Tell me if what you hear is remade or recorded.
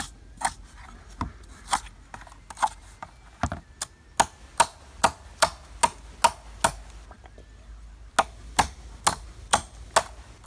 recorded